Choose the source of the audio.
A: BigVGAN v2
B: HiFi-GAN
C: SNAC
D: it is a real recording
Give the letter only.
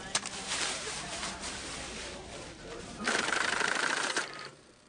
A